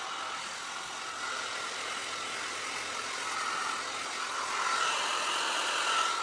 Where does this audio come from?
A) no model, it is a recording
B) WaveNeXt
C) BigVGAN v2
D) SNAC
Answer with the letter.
A